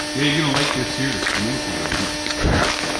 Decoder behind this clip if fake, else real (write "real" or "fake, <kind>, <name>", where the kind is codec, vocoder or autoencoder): real